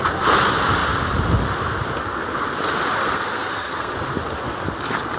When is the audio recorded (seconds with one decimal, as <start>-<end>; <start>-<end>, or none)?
0.0-3.0; 3.9-5.2